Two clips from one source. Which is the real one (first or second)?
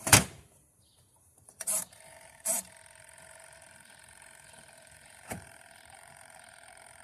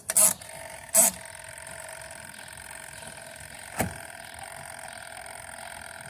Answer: second